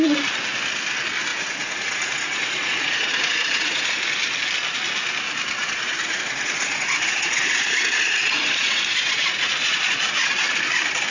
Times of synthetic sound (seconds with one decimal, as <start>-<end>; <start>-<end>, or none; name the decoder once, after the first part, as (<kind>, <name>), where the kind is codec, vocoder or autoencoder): 1.3-4.0 (vocoder, Vocos); 5.6-10.3